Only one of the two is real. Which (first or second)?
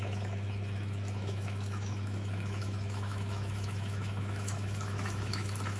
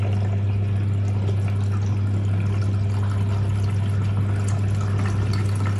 second